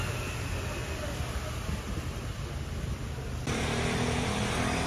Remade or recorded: recorded